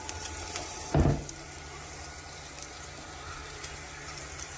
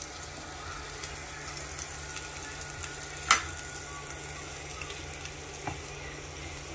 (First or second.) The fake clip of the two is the first